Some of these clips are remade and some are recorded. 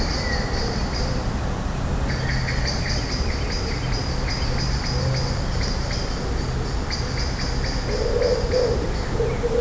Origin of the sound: recorded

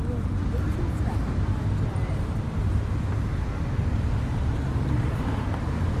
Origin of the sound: recorded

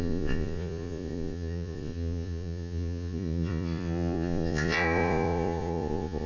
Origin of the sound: remade